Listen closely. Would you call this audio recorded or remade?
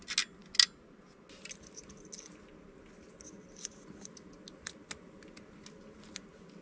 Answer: recorded